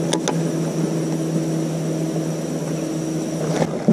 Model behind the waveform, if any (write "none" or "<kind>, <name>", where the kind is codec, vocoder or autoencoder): none